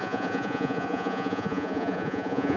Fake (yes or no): yes